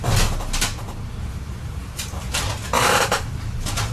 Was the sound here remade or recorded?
recorded